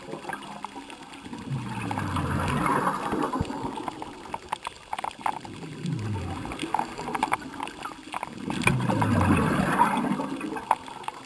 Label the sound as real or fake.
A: real